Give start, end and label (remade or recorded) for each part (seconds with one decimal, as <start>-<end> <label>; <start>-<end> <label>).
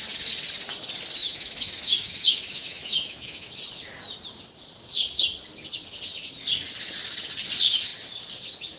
0.0-1.2 recorded; 1.2-3.5 remade; 3.5-8.8 recorded